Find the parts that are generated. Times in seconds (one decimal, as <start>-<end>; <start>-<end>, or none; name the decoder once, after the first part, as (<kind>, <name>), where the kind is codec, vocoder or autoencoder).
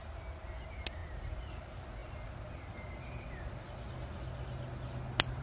none